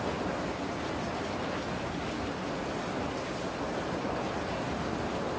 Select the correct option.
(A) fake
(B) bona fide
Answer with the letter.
B